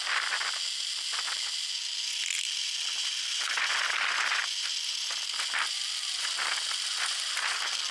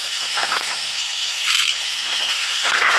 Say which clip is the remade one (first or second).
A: second